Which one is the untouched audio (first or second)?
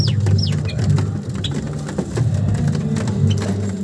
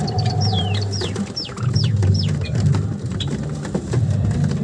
first